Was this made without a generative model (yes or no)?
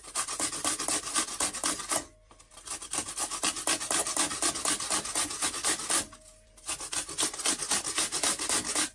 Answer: yes